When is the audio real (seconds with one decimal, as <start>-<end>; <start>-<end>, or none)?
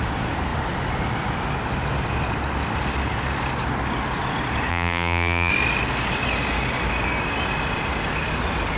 0.0-4.7; 5.5-8.8